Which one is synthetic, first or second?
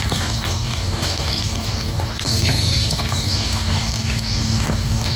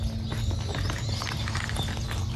first